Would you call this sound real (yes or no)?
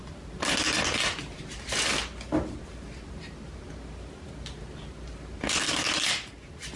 yes